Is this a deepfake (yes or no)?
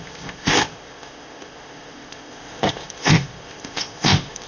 yes